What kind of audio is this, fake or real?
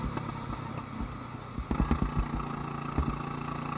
real